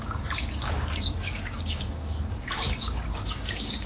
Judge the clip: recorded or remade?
remade